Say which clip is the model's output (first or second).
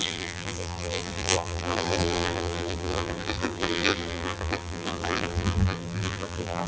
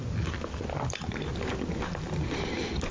first